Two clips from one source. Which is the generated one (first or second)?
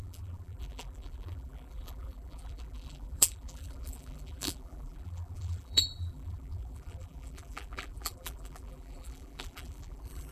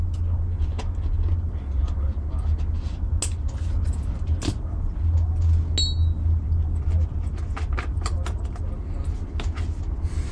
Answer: first